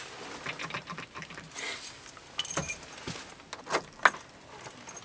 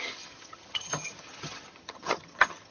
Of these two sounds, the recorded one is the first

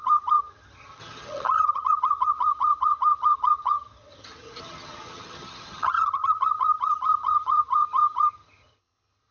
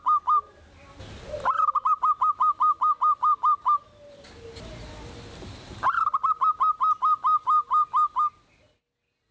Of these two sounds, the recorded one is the second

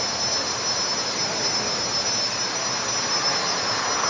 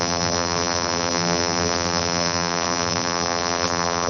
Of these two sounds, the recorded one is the first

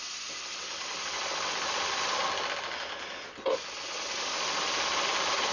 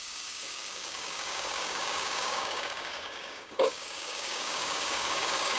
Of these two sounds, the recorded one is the first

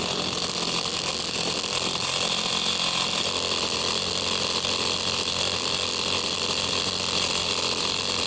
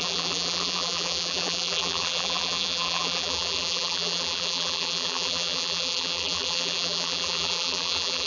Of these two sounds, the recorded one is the first